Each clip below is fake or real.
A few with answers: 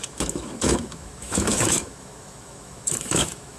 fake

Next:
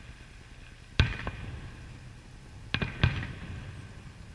real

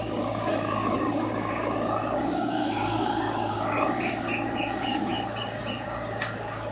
fake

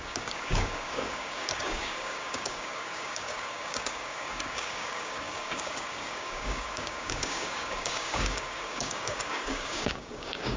fake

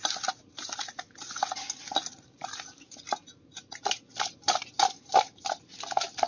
real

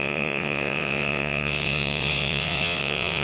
fake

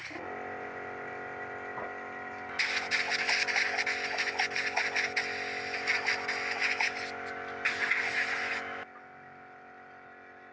real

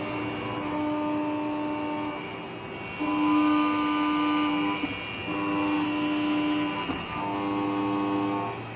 real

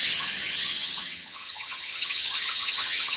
fake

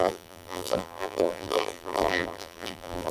fake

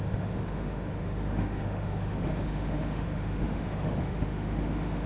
fake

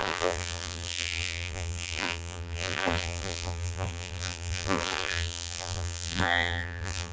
fake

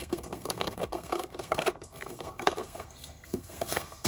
fake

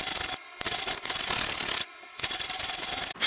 real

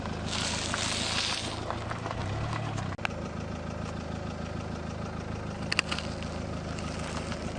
real